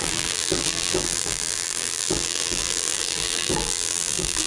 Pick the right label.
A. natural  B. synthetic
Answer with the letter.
B